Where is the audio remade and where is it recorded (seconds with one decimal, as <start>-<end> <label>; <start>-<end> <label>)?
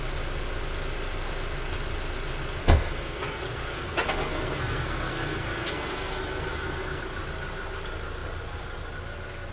0.0-2.6 recorded; 2.6-7.0 remade; 7.0-9.5 recorded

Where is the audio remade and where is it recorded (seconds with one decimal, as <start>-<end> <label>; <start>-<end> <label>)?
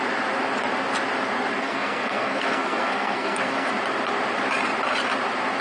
0.0-1.6 recorded; 1.6-3.7 remade; 3.7-5.6 recorded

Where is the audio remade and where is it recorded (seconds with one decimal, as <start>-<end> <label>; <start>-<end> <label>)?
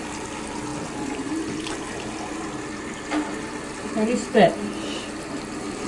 0.0-5.9 recorded